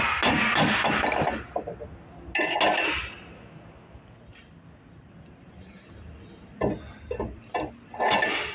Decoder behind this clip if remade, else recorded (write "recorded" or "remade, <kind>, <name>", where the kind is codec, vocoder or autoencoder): recorded